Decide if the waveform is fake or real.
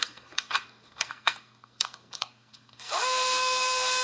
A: fake